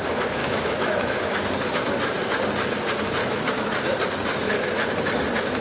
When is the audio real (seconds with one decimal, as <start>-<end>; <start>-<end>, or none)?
0.0-0.4; 1.2-3.2; 3.8-5.6